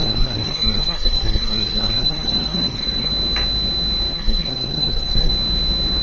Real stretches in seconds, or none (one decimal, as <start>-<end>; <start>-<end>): 3.1-4.1; 5.3-6.0